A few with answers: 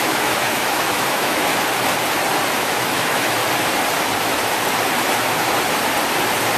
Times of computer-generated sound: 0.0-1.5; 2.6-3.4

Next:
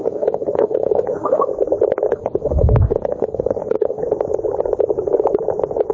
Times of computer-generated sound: 0.0-1.5; 2.1-4.0